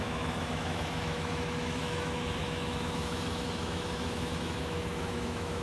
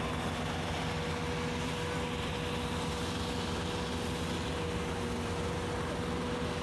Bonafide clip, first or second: second